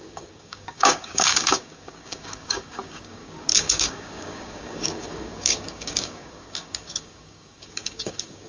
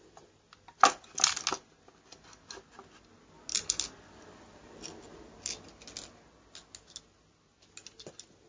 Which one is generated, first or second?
first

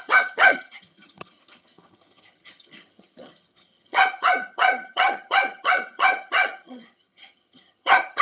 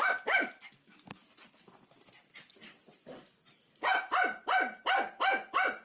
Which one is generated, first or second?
first